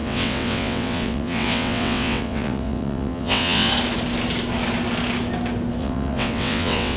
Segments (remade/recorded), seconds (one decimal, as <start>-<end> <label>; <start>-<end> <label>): 0.0-3.7 remade; 3.7-5.8 recorded; 5.8-7.0 remade